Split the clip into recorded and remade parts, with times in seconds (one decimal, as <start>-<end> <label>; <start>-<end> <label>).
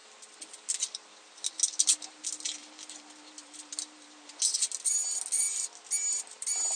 0.0-6.8 recorded